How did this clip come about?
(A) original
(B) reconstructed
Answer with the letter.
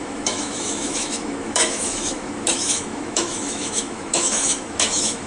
B